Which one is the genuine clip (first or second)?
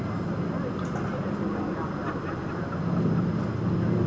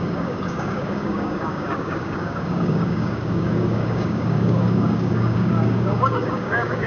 first